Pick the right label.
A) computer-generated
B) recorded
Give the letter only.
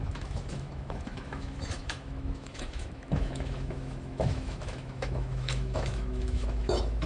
A